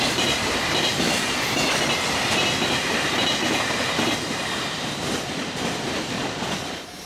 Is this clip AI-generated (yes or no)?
yes